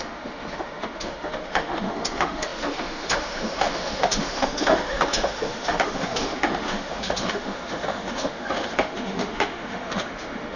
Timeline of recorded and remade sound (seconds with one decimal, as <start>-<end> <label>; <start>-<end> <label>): 0.0-10.6 remade